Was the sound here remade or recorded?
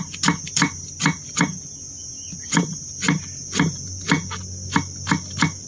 recorded